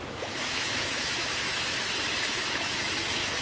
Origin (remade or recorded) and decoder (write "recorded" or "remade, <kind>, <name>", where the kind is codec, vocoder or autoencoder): remade, autoencoder, DAC-VAE